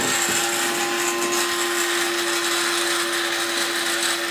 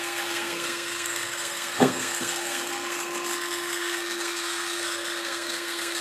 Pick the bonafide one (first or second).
first